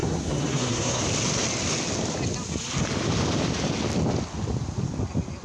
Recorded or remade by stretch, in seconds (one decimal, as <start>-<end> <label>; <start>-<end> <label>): 0.0-1.0 remade; 1.0-5.4 recorded